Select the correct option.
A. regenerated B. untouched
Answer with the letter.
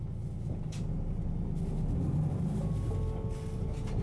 B